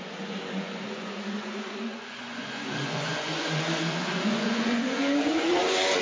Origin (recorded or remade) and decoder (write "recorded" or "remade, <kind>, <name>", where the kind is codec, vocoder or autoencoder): remade, vocoder, Vocos